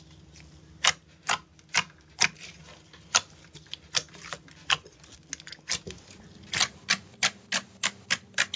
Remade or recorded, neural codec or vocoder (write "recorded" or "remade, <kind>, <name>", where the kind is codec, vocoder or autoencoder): recorded